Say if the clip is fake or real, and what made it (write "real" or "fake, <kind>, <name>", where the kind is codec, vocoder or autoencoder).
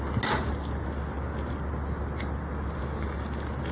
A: real